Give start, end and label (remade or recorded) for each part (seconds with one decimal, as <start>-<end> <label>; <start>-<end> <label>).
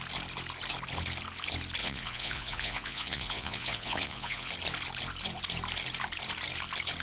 0.0-1.8 recorded; 1.8-4.5 remade; 4.5-7.0 recorded